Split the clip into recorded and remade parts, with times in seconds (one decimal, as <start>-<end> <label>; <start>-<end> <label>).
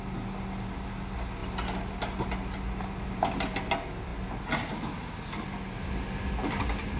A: 0.0-7.0 recorded